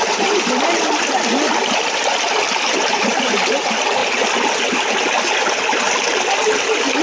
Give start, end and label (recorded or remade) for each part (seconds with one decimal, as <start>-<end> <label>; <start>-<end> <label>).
0.0-7.0 recorded